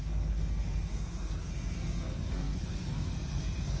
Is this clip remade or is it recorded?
remade